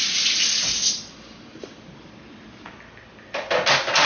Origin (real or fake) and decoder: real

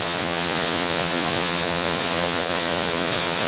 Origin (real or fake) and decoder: fake, vocoder, Vocos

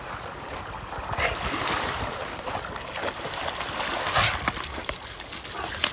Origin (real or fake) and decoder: real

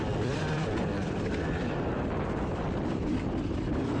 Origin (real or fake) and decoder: fake, vocoder, BigVGAN v2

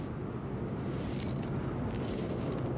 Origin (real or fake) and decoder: real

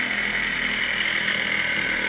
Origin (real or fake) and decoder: real